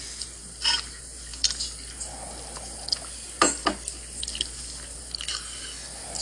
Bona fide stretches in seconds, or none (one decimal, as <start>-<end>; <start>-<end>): 0.0-6.2